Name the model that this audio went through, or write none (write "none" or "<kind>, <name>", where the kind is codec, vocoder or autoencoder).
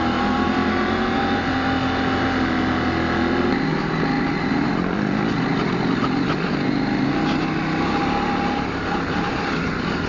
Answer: none